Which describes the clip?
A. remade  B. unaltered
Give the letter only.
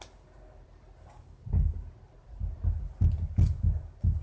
B